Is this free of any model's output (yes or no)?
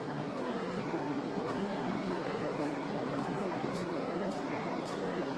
no